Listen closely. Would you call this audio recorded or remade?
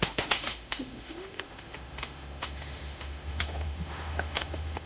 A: remade